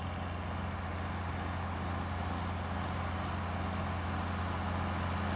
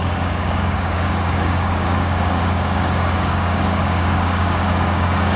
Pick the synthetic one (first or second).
second